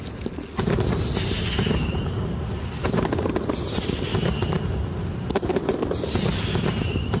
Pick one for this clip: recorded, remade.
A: recorded